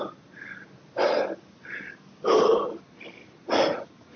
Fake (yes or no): no